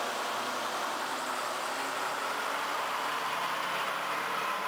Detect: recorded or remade recorded